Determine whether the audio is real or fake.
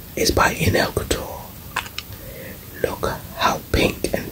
real